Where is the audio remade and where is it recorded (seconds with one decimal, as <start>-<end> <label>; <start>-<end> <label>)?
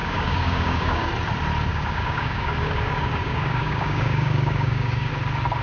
0.0-1.1 remade; 1.1-1.7 recorded; 1.7-5.1 remade; 5.1-5.6 recorded